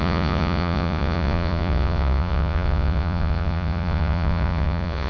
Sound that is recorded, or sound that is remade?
remade